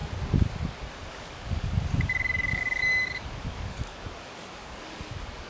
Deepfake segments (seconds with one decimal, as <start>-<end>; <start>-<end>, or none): 0.9-5.5